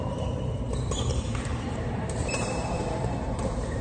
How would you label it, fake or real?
fake